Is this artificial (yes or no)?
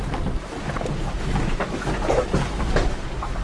no